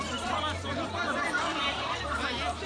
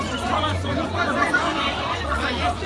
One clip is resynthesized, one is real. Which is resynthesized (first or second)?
second